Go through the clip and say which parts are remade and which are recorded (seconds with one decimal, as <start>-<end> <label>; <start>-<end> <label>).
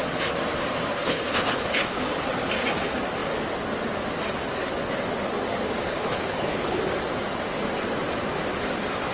0.0-0.9 recorded; 0.9-2.0 remade; 2.0-5.8 recorded; 5.8-6.8 remade; 6.8-9.1 recorded